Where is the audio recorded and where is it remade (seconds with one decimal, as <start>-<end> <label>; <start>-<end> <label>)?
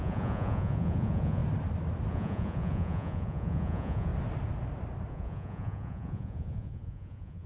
0.0-1.4 remade; 1.4-2.1 recorded; 2.1-4.1 remade; 4.1-5.1 recorded; 5.1-7.5 remade